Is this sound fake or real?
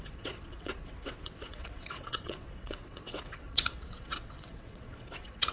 fake